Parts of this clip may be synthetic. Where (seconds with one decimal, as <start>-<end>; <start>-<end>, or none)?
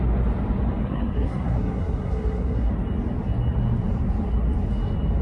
0.8-2.7